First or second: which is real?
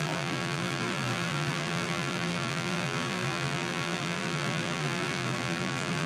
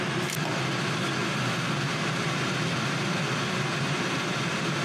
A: second